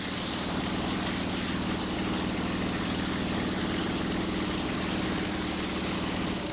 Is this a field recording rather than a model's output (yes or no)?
yes